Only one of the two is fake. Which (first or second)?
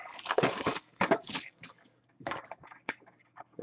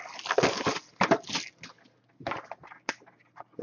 first